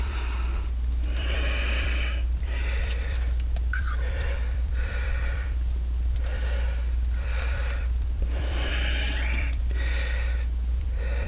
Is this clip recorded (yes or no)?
no